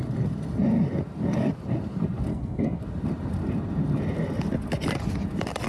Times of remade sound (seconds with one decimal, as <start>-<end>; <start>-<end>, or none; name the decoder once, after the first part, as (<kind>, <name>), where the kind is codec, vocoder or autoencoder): 2.3-2.8 (codec, SNAC)